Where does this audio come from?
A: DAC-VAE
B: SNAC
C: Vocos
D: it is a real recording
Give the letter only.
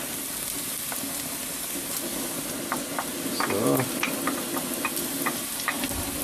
D